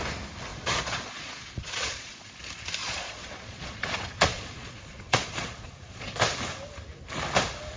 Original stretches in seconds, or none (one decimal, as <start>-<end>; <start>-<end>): 0.0-0.5; 2.3-2.8; 6.1-7.8